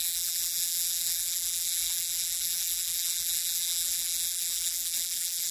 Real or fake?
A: fake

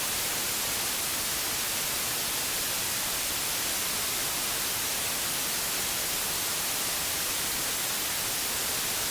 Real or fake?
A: real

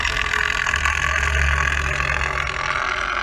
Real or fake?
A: real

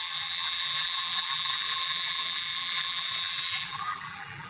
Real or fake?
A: fake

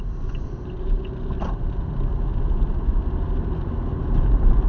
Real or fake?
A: real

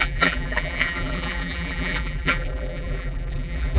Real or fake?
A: fake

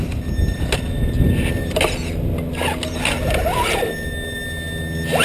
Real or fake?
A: real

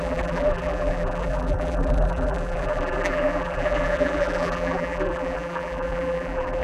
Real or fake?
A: fake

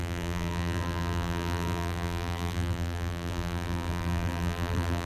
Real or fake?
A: fake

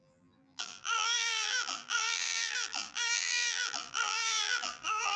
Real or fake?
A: fake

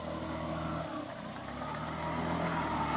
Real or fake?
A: real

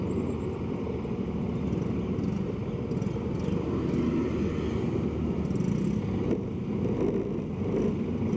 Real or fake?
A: real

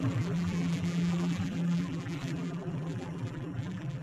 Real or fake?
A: fake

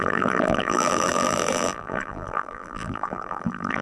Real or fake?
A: fake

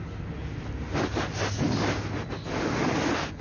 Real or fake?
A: real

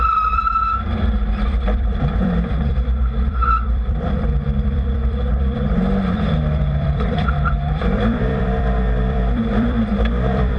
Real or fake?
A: fake